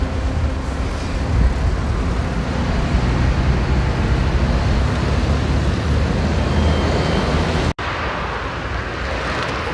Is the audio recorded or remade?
recorded